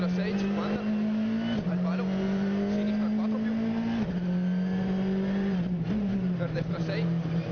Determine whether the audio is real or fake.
real